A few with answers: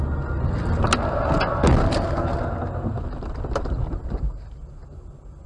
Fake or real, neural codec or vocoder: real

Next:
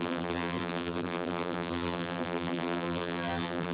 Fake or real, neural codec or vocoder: fake, vocoder, BigVGAN v2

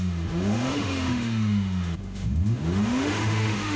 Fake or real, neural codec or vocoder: fake, autoencoder, DAC-VAE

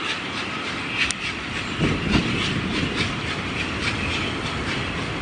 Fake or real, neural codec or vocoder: real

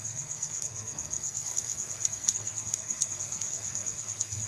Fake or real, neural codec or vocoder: fake, codec, SNAC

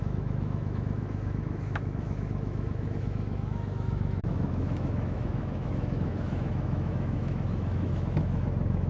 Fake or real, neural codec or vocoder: fake, autoencoder, DAC-VAE